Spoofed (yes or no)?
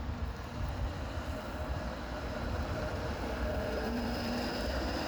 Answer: yes